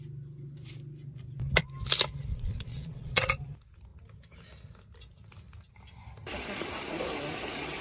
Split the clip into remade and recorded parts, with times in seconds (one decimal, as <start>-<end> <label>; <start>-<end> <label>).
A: 0.0-2.3 recorded; 2.3-3.3 remade; 3.3-7.8 recorded